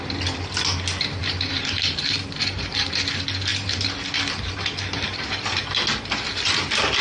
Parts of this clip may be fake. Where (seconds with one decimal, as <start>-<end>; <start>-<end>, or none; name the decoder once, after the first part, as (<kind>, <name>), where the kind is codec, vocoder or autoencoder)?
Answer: 1.2-2.9 (vocoder, BigVGAN v2)